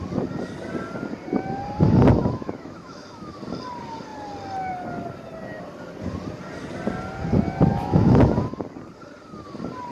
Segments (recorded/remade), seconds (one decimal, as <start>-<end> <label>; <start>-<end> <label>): 0.0-2.2 recorded; 2.2-3.4 remade; 3.4-7.7 recorded; 7.7-8.4 remade; 8.4-9.9 recorded

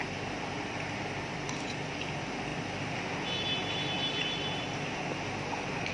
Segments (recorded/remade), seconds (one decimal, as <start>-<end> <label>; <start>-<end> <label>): 0.0-5.9 recorded

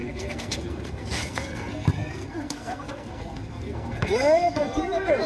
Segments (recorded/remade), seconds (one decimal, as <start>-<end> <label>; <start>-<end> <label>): 0.0-5.3 remade

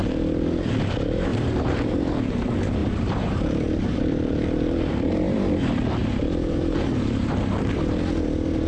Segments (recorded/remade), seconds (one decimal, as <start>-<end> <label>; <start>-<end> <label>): 0.0-1.3 recorded; 1.3-2.0 remade; 2.0-2.8 recorded; 2.8-5.5 remade; 5.5-6.0 recorded; 6.0-7.8 remade; 7.8-8.7 recorded